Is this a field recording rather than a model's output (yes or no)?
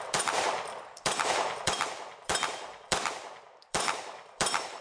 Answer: no